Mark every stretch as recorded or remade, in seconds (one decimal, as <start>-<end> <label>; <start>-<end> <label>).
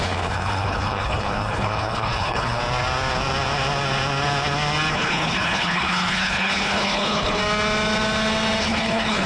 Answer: 0.0-2.6 remade; 2.6-4.9 recorded; 4.9-7.4 remade; 7.4-8.6 recorded; 8.6-9.3 remade